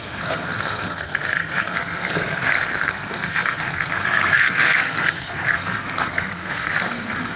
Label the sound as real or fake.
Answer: fake